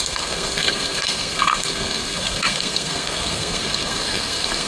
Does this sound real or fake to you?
fake